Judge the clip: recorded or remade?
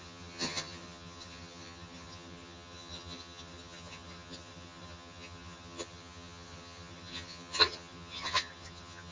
remade